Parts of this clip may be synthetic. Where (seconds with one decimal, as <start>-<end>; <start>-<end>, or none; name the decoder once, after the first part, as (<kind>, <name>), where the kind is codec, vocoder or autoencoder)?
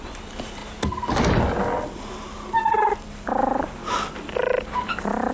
0.0-0.6 (vocoder, BigVGAN v2); 3.1-3.8